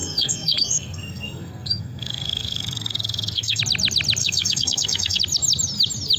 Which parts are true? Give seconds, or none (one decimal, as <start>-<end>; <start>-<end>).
3.6-4.2; 5.2-6.2